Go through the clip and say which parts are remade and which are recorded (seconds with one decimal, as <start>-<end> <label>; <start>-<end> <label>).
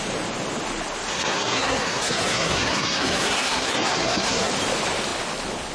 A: 0.0-1.1 recorded; 1.1-4.5 remade; 4.5-5.7 recorded